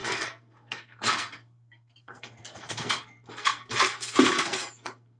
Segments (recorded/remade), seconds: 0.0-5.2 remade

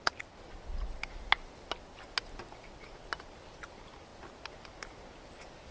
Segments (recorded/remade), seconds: 0.0-5.7 recorded